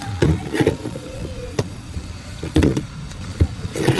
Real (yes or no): no